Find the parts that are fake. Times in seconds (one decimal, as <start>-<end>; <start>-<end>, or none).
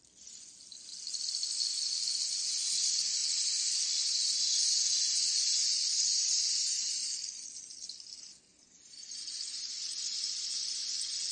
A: 3.2-3.7; 6.1-7.1; 8.5-10.9